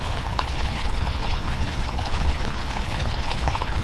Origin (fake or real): fake